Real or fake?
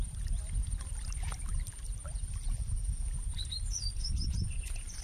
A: real